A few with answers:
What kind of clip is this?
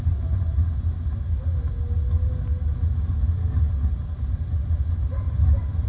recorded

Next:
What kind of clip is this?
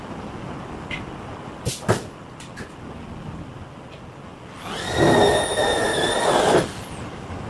recorded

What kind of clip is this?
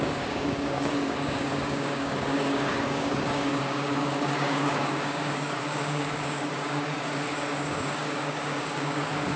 remade